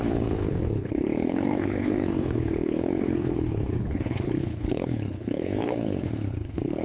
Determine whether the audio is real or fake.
fake